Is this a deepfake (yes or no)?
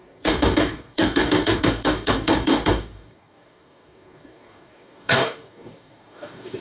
yes